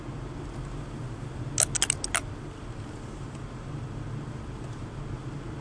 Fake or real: real